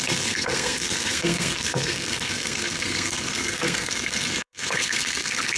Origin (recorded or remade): remade